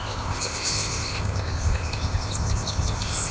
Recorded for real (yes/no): no